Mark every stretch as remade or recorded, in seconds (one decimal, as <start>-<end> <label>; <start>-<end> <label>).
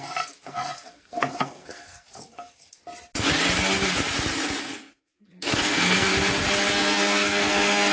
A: 0.0-2.8 remade; 2.8-4.6 recorded; 4.6-6.1 remade; 6.1-6.7 recorded; 6.7-7.9 remade